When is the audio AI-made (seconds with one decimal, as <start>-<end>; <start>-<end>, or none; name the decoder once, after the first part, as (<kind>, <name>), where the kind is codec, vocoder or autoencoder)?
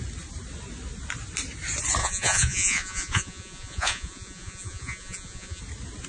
2.0-5.6 (vocoder, Vocos)